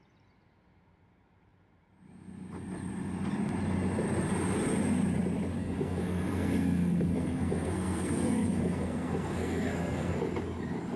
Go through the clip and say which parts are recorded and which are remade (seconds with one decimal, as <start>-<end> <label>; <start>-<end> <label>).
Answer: 0.0-5.6 recorded; 5.6-10.1 remade; 10.1-11.0 recorded